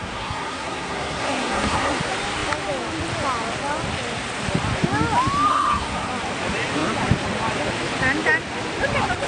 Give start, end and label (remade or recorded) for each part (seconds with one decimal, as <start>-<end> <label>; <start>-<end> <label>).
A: 0.0-2.0 remade; 2.0-5.5 recorded; 5.5-6.1 remade; 6.1-9.3 recorded